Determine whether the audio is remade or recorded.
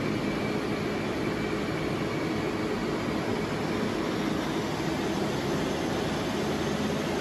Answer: recorded